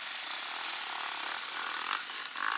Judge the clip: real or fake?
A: real